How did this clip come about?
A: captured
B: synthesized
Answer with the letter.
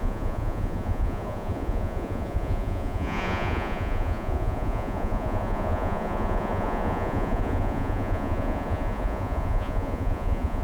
B